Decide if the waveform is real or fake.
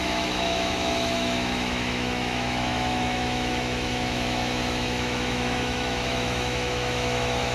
fake